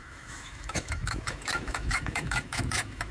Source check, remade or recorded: remade